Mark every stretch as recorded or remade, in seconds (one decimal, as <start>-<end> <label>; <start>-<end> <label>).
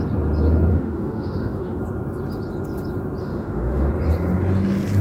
0.0-0.7 recorded; 0.7-1.8 remade; 1.8-3.2 recorded; 3.2-3.9 remade; 3.9-5.0 recorded